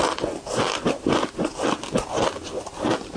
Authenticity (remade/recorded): recorded